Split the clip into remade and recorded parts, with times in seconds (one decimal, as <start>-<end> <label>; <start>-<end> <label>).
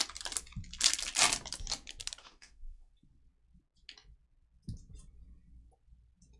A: 0.0-2.2 recorded; 2.2-2.9 remade; 2.9-6.4 recorded